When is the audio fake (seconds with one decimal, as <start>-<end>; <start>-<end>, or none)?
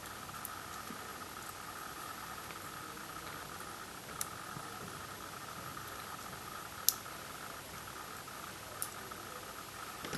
none